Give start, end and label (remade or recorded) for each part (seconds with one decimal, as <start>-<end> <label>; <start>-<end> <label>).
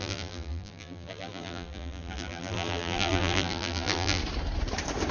0.0-4.2 remade; 4.2-5.1 recorded